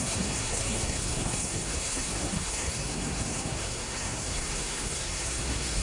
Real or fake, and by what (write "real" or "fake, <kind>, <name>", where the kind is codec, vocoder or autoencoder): fake, codec, SNAC